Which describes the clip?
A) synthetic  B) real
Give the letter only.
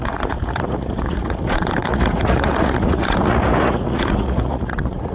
A